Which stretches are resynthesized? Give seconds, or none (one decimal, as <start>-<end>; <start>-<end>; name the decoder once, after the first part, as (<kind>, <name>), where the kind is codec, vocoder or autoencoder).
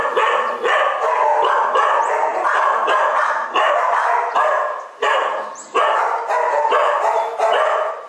2.3-5.8 (vocoder, BigVGAN v2); 6.8-7.4